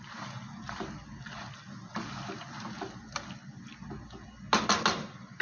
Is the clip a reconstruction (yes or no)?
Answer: no